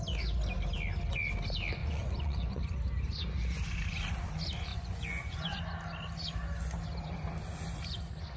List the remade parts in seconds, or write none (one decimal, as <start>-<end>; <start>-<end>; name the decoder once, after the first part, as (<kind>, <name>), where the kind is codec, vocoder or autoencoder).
1.8-2.6 (vocoder, Vocos); 4.7-5.6